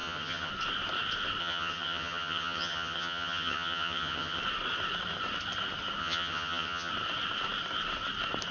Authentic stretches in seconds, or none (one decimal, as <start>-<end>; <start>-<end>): 0.5-1.4; 4.4-6.0; 6.9-8.5